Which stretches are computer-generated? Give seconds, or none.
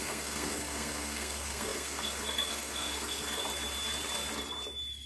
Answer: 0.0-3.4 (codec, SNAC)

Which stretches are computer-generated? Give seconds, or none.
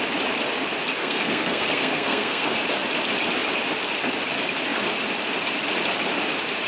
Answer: 1.0-2.6 (codec, SNAC)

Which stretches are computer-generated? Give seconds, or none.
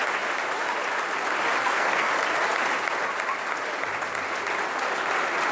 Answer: 1.6-2.1 (codec, SNAC)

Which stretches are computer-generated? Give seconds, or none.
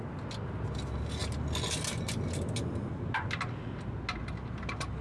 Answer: none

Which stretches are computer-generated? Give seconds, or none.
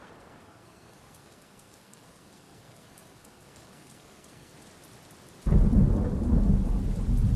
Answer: 0.0-4.5 (codec, SNAC)